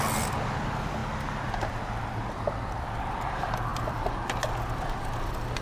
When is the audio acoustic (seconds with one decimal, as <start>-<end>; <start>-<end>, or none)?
1.0-2.3; 3.7-5.6